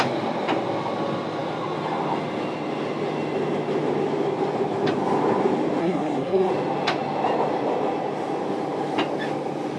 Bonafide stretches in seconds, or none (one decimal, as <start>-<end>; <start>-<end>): 0.0-5.8; 6.5-9.8